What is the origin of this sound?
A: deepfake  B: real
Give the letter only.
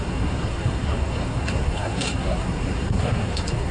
A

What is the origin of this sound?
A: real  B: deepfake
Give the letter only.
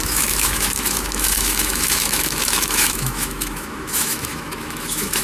B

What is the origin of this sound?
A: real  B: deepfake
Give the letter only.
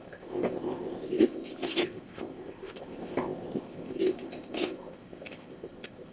B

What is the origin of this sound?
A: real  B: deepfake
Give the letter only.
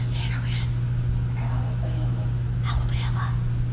A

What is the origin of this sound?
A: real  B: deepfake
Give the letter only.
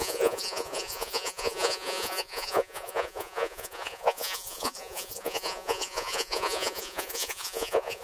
B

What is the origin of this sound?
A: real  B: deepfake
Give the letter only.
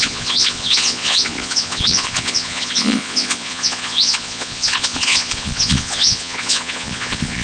B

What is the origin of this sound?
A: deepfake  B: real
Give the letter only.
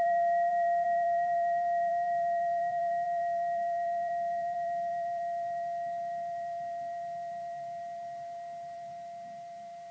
A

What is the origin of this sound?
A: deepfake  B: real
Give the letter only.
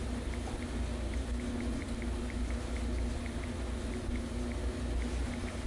B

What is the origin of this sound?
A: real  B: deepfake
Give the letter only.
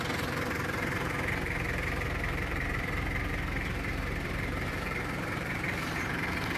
B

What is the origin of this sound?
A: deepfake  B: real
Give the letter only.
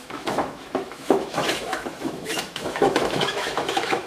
A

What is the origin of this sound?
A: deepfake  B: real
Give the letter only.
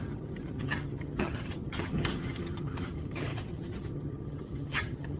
A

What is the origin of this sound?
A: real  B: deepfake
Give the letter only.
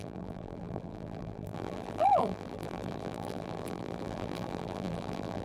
B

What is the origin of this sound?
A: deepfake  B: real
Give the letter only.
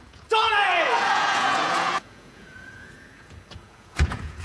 A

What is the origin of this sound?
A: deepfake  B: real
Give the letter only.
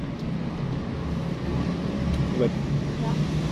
B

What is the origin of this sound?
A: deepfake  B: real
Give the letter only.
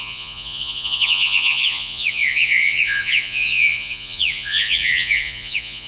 A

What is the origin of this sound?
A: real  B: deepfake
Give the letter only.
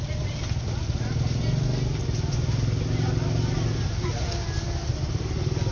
A